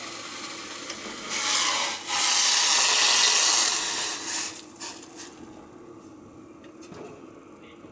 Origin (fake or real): real